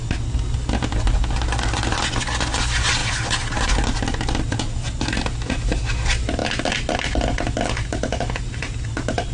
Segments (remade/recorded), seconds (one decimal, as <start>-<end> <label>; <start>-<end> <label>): 0.0-9.3 recorded